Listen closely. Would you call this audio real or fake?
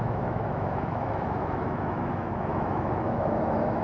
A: fake